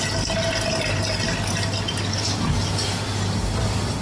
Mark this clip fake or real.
real